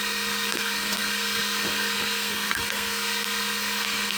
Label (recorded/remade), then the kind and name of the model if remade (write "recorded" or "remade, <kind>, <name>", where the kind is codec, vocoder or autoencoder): remade, codec, SNAC